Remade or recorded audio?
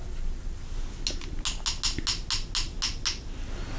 recorded